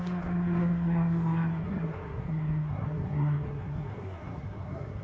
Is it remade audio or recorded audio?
remade